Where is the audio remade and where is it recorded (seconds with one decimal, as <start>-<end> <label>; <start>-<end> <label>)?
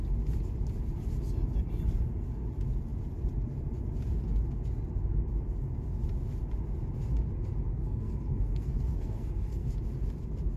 0.0-7.7 recorded; 7.7-9.7 remade; 9.7-10.6 recorded